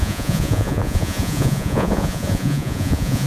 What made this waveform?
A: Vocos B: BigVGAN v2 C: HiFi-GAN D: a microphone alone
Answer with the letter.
A